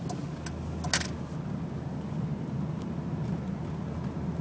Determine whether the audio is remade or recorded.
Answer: recorded